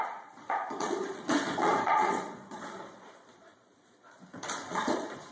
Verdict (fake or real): fake